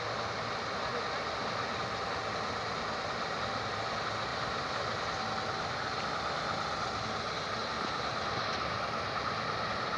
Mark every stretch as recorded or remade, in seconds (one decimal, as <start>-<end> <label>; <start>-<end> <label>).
0.0-4.3 recorded; 4.3-5.2 remade; 5.2-7.6 recorded; 7.6-9.2 remade; 9.2-10.0 recorded